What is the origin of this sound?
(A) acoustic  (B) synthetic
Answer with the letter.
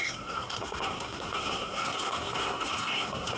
B